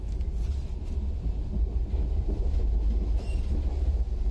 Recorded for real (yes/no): yes